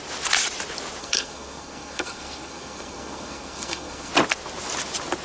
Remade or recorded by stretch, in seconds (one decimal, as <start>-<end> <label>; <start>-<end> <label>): 0.0-1.0 recorded; 1.0-4.1 remade; 4.1-5.2 recorded

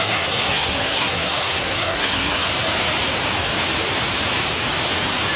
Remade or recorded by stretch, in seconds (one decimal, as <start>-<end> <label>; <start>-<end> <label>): 0.0-2.5 remade; 2.5-5.4 recorded

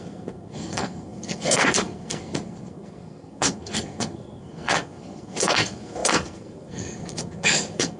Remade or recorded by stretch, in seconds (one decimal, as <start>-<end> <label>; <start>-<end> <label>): 0.0-8.0 remade

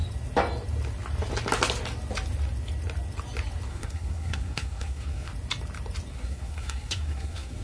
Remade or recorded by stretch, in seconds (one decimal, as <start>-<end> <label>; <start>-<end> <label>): 0.0-3.7 recorded; 3.7-5.3 remade; 5.3-6.1 recorded; 6.1-7.6 remade

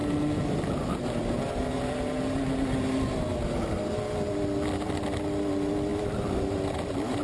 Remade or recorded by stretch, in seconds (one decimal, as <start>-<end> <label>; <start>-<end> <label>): 0.0-7.2 recorded

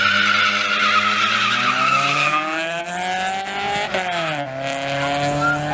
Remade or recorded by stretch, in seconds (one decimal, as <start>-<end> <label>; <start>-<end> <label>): 0.0-2.1 recorded; 2.1-2.8 remade; 2.8-5.7 recorded

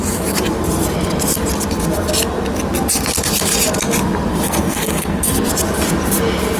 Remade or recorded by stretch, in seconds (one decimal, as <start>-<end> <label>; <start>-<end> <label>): 0.0-4.3 recorded; 4.3-5.5 remade; 5.5-6.6 recorded

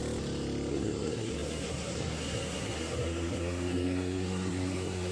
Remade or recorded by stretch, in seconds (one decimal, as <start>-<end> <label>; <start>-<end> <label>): 0.0-0.7 recorded; 0.7-5.1 remade